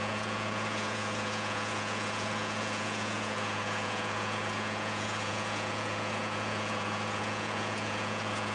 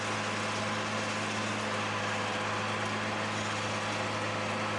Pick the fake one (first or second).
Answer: first